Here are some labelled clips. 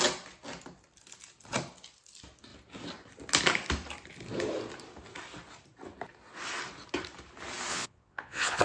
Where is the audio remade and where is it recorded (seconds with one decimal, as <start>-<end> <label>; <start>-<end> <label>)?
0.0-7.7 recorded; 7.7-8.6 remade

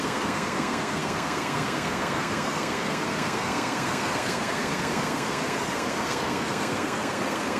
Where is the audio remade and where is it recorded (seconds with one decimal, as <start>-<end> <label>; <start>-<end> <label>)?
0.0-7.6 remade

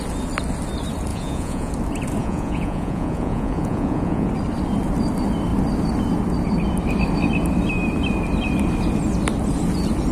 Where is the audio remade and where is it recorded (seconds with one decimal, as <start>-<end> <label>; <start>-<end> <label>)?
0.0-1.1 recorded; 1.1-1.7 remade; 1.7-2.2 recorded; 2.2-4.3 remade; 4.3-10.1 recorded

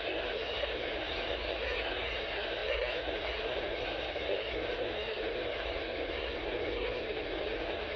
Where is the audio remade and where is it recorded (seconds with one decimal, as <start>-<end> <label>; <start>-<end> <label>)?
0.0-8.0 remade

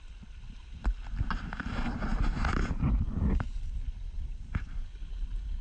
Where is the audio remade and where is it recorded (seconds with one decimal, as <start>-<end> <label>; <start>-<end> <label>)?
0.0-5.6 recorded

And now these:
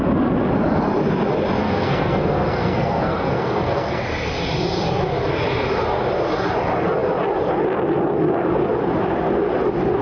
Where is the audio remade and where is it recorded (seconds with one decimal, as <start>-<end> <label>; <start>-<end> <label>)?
0.0-1.6 recorded; 1.6-4.0 remade; 4.0-10.0 recorded

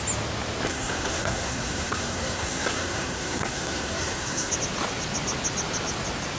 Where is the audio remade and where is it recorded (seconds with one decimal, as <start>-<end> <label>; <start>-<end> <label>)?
0.0-0.7 recorded; 0.7-4.5 remade; 4.5-6.4 recorded